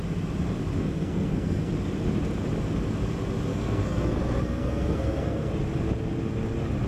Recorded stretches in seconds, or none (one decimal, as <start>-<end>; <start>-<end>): 0.0-0.8; 1.7-3.5; 5.5-6.9